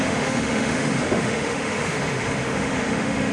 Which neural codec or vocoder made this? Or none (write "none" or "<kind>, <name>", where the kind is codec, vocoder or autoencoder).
autoencoder, DAC-VAE